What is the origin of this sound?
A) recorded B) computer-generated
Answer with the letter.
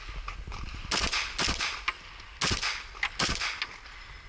A